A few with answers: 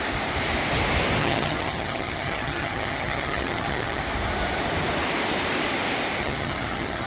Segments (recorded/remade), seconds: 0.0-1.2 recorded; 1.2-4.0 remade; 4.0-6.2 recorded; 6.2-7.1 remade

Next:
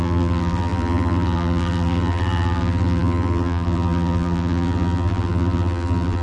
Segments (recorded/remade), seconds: 0.0-6.2 remade

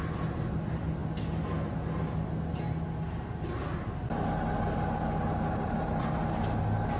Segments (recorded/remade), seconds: 0.0-7.0 recorded

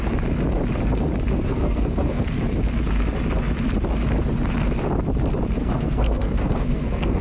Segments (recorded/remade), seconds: 0.0-1.5 recorded; 1.5-2.2 remade; 2.2-5.6 recorded; 5.6-7.2 remade

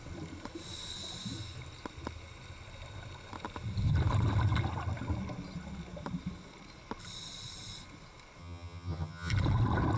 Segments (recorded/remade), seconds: 0.0-8.4 recorded; 8.4-9.3 remade; 9.3-10.0 recorded